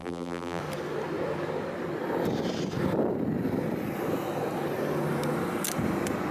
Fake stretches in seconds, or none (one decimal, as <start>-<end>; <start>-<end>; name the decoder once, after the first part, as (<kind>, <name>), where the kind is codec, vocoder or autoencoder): 0.0-0.6 (vocoder, BigVGAN v2)